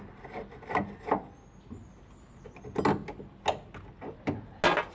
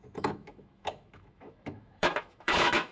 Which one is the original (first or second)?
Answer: first